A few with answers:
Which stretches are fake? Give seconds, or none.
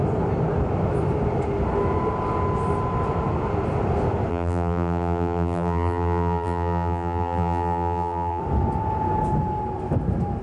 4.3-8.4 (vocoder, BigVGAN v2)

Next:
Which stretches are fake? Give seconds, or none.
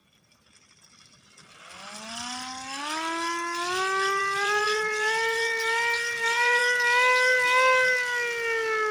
4.2-6.6 (vocoder, BigVGAN v2)